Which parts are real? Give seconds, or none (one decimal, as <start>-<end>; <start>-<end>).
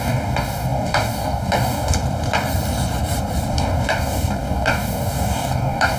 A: 1.9-3.5